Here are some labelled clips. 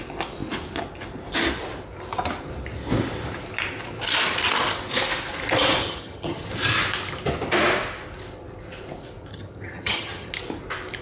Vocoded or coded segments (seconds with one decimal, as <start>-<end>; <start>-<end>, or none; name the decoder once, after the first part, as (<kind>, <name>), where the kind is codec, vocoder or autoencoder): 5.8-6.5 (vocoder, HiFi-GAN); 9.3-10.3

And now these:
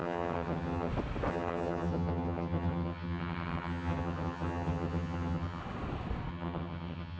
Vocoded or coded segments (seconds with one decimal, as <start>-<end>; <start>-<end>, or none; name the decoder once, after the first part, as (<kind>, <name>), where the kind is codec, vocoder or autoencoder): 0.0-0.9 (vocoder, HiFi-GAN); 1.3-5.6; 6.3-7.2

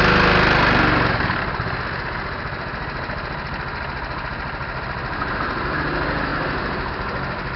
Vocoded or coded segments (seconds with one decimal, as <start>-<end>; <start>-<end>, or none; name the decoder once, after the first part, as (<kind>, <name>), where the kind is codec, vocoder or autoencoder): none

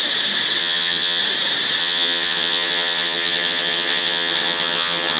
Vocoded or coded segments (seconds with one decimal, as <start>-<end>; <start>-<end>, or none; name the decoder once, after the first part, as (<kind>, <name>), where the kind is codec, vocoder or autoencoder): 0.6-1.2 (vocoder, HiFi-GAN); 1.8-5.2

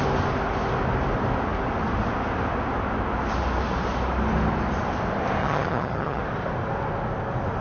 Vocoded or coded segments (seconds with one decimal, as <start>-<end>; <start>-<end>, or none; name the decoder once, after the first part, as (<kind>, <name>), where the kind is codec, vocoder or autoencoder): 5.4-6.2 (vocoder, HiFi-GAN)